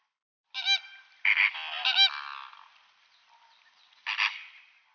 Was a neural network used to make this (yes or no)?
no